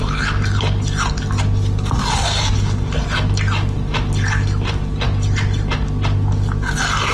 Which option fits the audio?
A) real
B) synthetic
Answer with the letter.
A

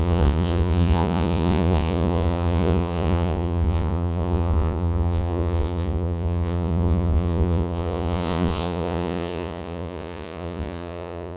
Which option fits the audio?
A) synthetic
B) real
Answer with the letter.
A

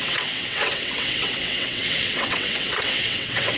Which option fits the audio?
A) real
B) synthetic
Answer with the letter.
B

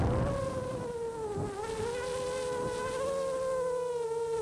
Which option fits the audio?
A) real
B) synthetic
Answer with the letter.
A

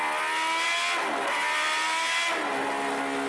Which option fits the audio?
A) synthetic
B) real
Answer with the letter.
B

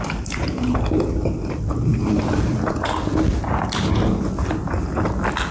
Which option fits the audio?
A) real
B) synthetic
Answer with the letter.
A